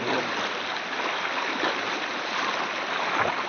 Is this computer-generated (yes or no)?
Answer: no